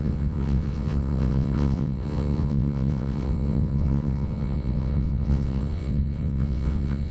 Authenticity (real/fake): fake